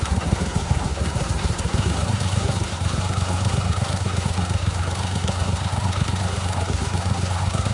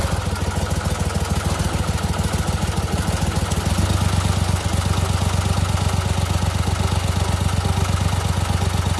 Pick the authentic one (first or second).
second